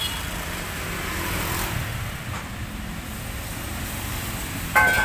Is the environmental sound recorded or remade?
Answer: remade